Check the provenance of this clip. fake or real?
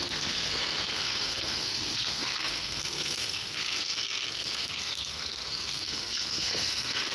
fake